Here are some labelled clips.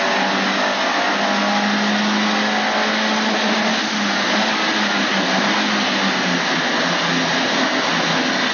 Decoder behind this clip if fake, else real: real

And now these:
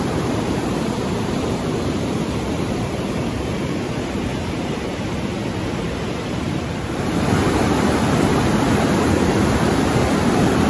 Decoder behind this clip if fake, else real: fake, vocoder, BigVGAN v2